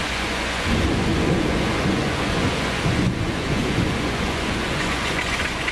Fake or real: fake